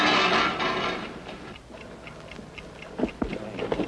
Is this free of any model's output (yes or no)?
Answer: yes